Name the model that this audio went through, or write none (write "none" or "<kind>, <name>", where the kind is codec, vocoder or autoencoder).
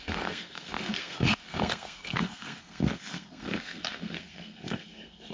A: codec, SNAC